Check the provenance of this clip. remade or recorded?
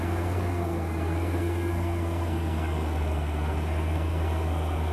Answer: remade